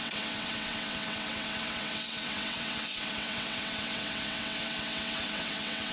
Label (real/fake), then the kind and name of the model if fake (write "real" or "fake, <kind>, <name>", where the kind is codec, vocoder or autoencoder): fake, vocoder, WaveNeXt